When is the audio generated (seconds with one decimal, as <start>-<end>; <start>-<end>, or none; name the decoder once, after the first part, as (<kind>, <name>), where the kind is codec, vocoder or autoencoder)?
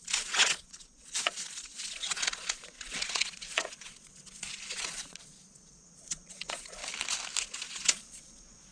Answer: 0.0-6.8 (vocoder, Vocos); 7.4-8.7